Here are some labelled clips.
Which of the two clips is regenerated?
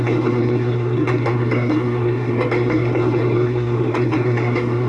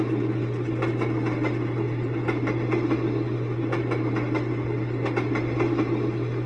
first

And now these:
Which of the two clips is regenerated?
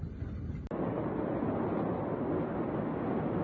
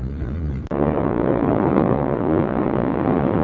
second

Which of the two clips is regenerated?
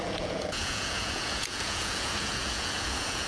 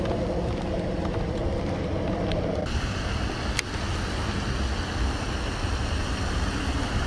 first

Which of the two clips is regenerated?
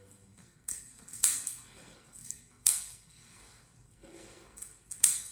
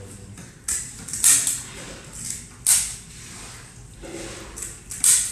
first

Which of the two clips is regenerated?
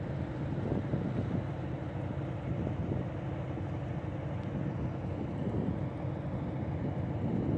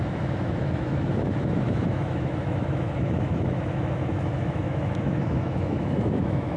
second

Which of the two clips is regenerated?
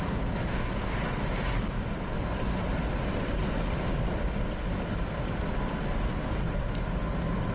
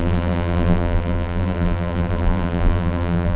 second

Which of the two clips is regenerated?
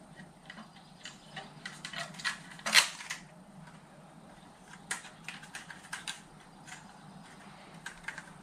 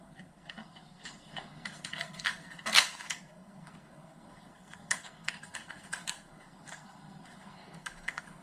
second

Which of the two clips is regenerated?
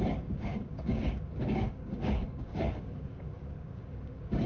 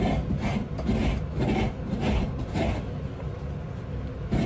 first